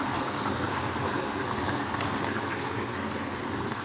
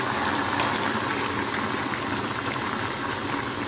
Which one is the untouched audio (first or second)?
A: second